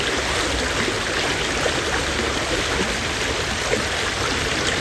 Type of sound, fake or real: real